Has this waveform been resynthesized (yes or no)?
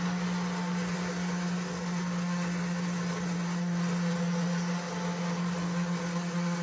no